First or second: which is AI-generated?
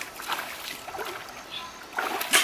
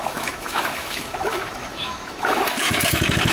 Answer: second